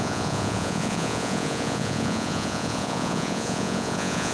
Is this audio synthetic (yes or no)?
yes